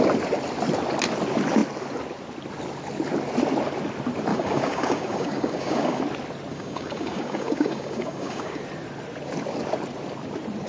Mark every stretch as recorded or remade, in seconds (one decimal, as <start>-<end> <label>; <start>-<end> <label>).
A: 0.0-4.3 recorded; 4.3-6.0 remade; 6.0-6.5 recorded; 6.5-8.6 remade; 8.6-10.7 recorded